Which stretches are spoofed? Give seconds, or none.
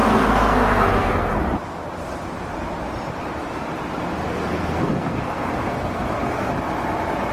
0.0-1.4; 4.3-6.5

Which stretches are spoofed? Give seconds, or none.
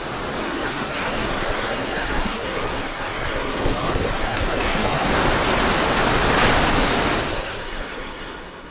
0.4-5.1; 7.3-8.7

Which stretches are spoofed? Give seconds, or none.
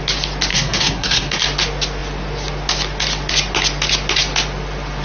0.5-1.4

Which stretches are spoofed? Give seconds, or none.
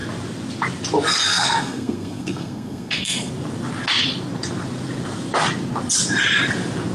1.3-3.3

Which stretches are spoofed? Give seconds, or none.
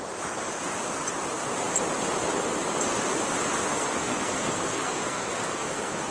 3.7-6.1